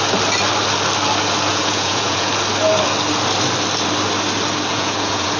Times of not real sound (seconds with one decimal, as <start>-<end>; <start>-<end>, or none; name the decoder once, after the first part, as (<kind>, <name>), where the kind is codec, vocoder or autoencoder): 1.5-2.3 (vocoder, Vocos); 4.7-5.4